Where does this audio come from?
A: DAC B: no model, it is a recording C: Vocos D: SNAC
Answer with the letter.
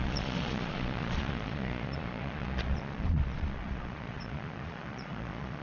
C